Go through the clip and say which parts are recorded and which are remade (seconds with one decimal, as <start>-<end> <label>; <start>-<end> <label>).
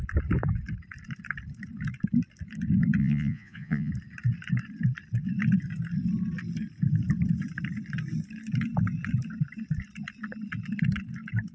0.0-3.0 recorded; 3.0-3.9 remade; 3.9-11.5 recorded